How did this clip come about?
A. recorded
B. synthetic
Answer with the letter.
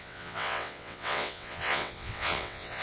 B